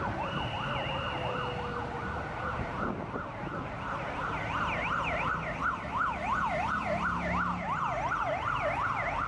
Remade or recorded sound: recorded